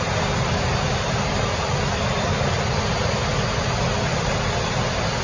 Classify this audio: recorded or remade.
recorded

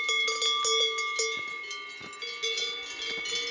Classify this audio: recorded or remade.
recorded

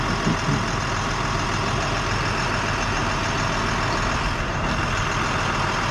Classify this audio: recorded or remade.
recorded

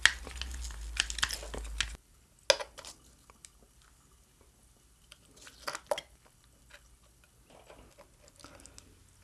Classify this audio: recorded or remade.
recorded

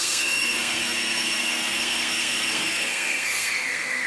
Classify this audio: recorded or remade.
remade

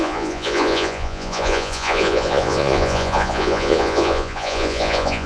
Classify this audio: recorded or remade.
remade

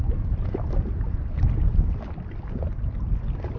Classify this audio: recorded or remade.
remade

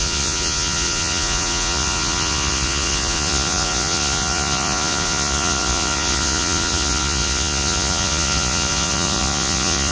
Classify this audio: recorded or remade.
remade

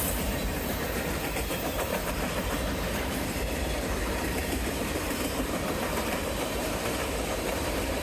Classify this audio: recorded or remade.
remade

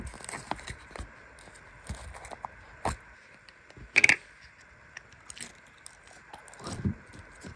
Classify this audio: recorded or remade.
recorded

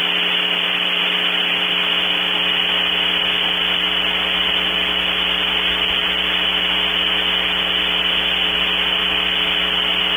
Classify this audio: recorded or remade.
recorded